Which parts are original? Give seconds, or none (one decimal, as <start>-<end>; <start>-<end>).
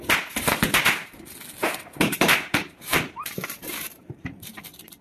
0.0-1.6; 4.6-5.0